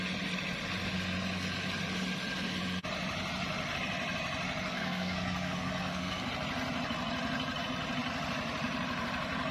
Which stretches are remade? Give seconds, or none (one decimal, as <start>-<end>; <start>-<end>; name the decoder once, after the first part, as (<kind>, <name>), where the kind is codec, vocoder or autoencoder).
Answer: 4.7-6.3 (codec, SNAC)